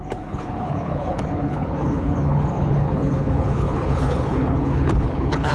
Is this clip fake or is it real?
fake